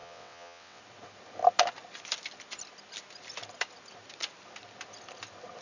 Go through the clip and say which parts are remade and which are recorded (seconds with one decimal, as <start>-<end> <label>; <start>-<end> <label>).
0.0-0.8 remade; 0.8-5.6 recorded